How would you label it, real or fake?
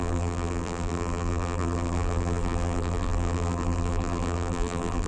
fake